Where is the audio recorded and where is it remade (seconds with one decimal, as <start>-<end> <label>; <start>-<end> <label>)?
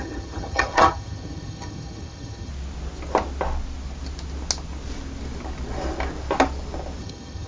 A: 0.0-2.5 remade; 2.5-7.0 recorded; 7.0-7.5 remade